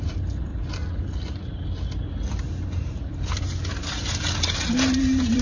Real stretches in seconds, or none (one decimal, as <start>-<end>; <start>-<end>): 0.5-2.7

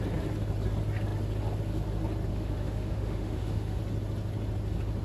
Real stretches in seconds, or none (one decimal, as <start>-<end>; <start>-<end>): 0.0-2.3; 3.8-5.0

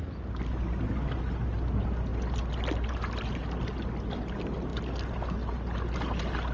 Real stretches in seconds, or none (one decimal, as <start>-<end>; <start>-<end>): 0.0-6.5

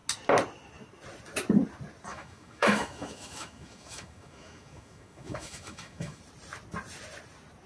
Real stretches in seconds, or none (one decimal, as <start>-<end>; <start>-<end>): 0.0-2.1; 6.2-7.7